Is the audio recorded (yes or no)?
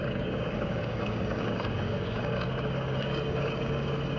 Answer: no